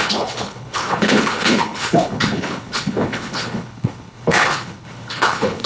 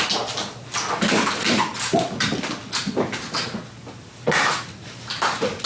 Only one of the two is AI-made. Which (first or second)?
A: first